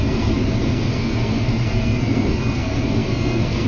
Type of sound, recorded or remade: remade